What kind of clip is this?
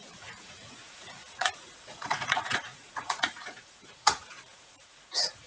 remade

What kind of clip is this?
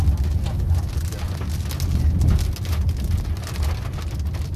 recorded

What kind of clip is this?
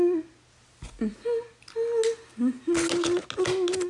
recorded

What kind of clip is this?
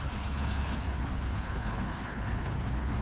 remade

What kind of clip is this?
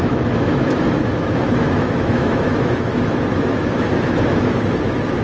remade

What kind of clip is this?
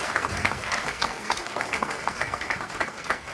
remade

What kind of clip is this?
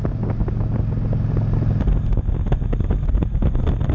recorded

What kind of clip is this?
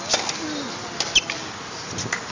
recorded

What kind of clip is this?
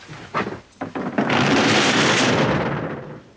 recorded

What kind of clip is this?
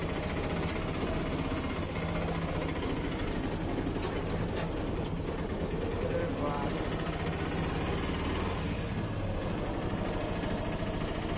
recorded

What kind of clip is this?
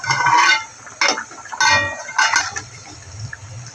recorded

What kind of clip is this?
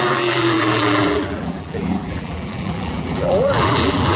remade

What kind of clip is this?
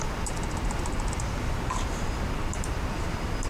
remade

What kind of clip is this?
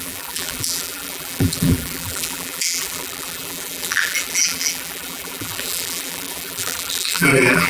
remade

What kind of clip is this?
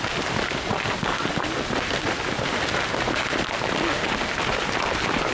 recorded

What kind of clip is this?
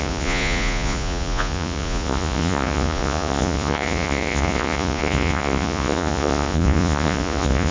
remade